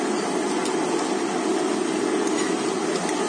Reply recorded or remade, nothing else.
recorded